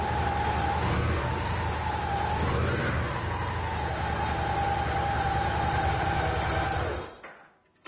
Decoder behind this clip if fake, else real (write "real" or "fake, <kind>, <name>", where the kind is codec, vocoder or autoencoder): real